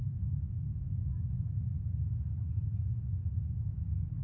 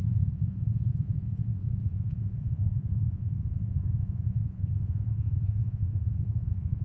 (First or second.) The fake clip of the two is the second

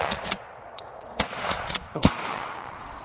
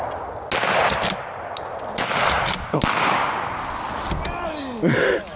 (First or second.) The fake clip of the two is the first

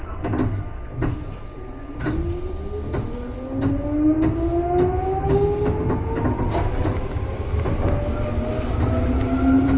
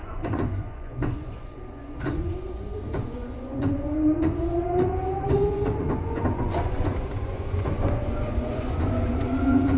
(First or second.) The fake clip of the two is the second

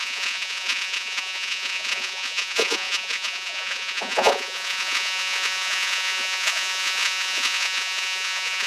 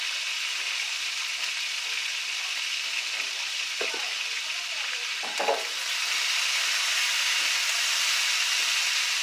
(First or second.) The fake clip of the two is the first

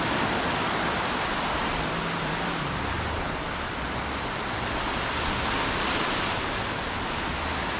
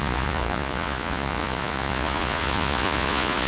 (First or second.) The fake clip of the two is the second